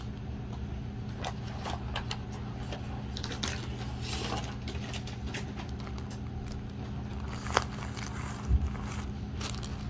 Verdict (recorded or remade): recorded